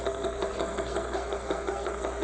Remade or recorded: remade